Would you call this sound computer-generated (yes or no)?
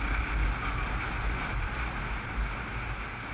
no